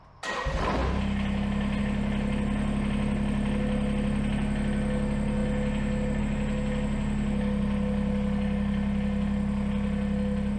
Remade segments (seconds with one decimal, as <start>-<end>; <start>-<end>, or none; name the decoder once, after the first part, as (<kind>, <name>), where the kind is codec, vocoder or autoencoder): none